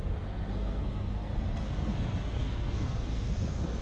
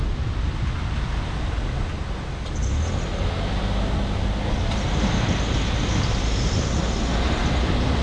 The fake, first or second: first